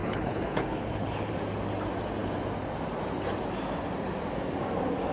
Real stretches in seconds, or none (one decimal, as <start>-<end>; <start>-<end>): 1.3-5.1